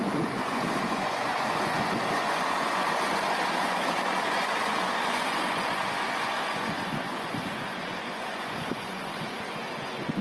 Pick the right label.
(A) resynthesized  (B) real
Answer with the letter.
A